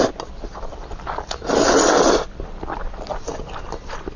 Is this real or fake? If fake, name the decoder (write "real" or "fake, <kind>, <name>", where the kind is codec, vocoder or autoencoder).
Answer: real